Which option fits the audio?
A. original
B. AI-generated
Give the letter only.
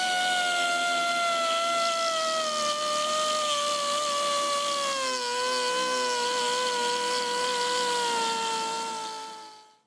A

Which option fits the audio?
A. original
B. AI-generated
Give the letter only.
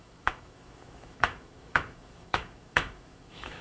B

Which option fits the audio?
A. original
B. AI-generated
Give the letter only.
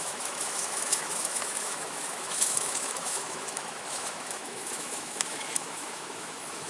B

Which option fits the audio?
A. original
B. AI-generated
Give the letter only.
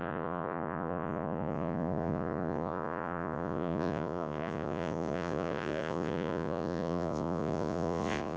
B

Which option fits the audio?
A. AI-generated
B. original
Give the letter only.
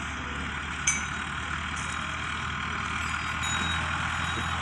B